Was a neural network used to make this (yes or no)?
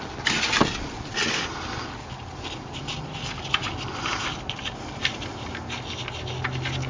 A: no